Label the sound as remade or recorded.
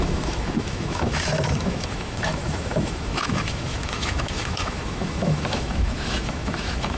remade